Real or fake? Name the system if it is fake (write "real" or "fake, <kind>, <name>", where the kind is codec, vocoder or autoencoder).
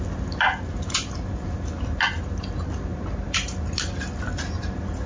real